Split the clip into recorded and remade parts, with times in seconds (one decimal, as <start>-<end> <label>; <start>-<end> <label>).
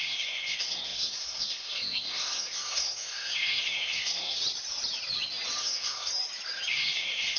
0.0-4.4 remade; 4.4-5.6 recorded; 5.6-6.1 remade; 6.1-6.7 recorded; 6.7-7.4 remade